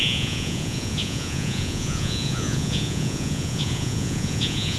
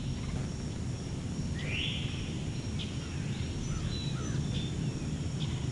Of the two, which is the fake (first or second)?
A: first